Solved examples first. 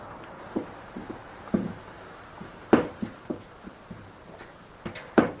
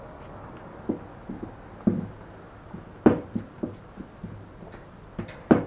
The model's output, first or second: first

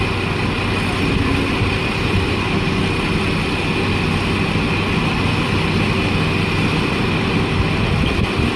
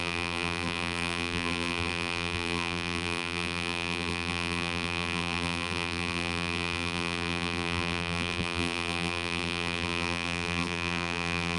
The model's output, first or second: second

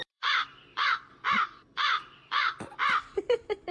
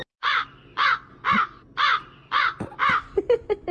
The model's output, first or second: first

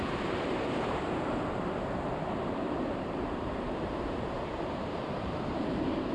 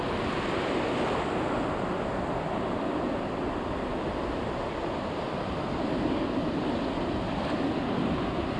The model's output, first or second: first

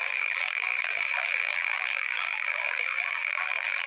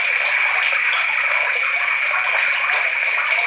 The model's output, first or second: first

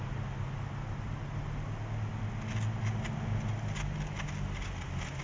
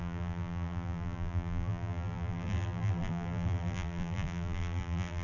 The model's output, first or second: second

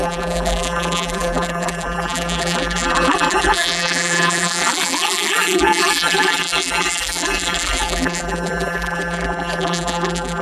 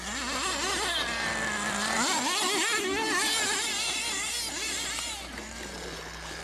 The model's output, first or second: first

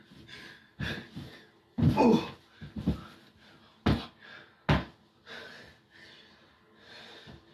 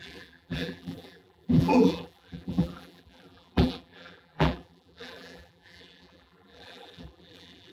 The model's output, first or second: second